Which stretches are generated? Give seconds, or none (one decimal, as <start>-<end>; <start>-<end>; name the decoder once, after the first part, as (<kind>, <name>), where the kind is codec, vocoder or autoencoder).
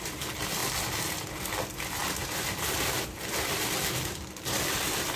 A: none